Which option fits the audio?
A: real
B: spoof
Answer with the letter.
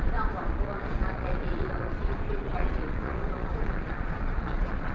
B